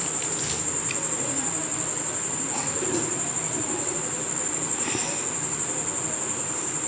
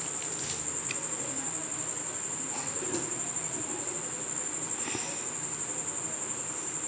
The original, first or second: second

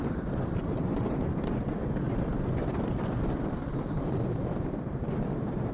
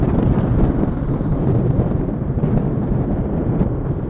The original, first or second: second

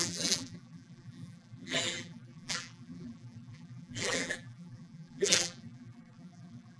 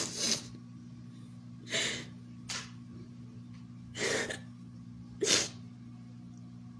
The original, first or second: second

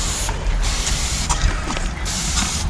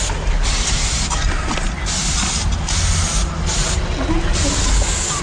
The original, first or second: second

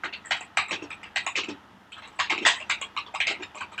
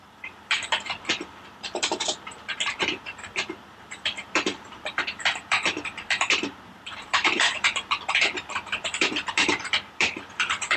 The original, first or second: first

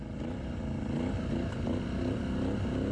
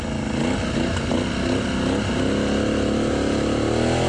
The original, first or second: second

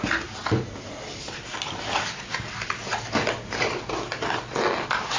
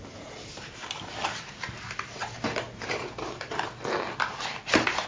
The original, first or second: first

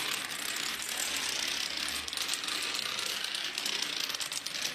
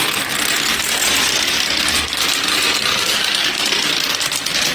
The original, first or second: first